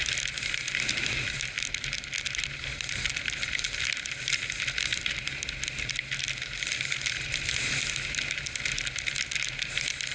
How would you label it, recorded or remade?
recorded